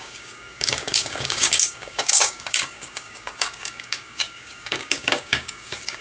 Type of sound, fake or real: fake